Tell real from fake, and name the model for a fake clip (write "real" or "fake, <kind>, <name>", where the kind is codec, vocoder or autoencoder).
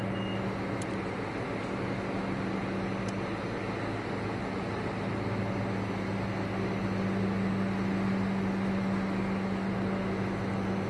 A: real